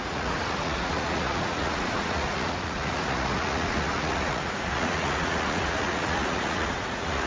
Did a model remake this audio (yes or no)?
yes